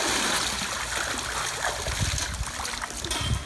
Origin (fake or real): real